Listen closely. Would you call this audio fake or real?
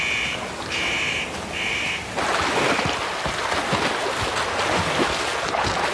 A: real